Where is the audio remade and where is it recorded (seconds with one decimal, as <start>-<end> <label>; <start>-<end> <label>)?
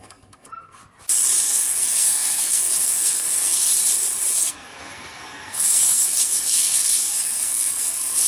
0.0-0.8 remade; 0.8-1.4 recorded; 1.4-3.7 remade; 3.7-4.3 recorded; 4.3-8.3 remade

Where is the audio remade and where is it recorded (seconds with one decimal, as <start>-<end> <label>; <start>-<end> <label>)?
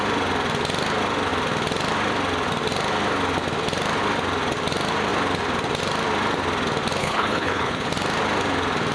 0.0-7.0 recorded; 7.0-7.9 remade; 7.9-8.9 recorded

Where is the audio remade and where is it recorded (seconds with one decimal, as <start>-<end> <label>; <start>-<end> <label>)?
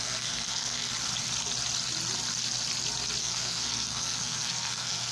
0.0-0.9 remade; 0.9-3.2 recorded; 3.2-5.1 remade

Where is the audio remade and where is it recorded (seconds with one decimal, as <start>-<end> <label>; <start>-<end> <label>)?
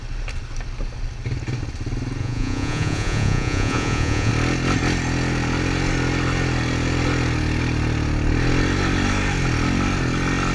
0.0-2.2 recorded; 2.2-4.3 remade; 4.3-10.5 recorded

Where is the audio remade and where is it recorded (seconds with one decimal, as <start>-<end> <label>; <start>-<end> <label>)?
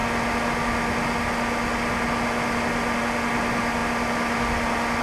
0.0-5.0 recorded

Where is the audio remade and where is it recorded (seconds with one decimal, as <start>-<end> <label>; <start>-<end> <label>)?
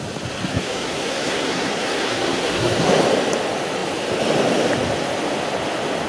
0.0-0.5 recorded; 0.5-3.0 remade; 3.0-6.1 recorded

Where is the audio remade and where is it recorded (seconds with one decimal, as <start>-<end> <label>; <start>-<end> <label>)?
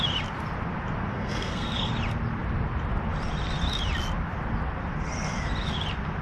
0.0-1.1 recorded; 1.1-1.9 remade; 1.9-6.2 recorded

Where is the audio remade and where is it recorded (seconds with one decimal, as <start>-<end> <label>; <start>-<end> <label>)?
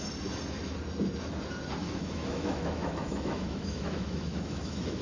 0.0-1.8 recorded; 1.8-5.0 remade